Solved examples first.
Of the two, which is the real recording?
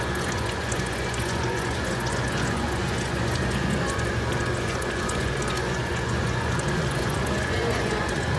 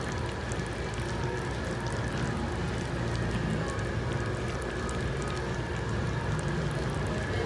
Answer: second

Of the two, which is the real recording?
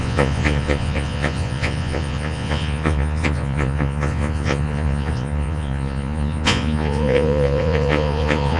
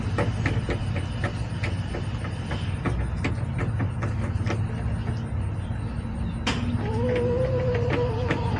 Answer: second